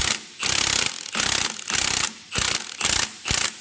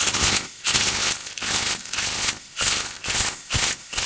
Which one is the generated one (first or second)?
second